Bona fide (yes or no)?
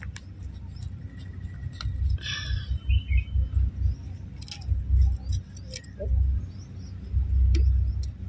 yes